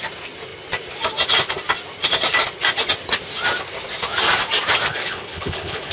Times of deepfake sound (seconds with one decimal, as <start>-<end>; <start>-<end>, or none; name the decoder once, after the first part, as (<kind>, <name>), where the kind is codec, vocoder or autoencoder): 4.9-5.9 (codec, HILCodec)